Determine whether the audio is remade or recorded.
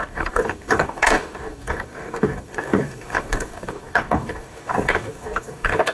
remade